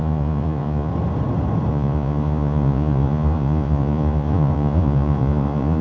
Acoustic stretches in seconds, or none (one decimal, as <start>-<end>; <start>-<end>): 0.9-1.7